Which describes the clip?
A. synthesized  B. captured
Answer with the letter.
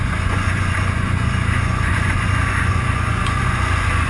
A